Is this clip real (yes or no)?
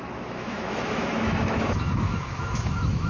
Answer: no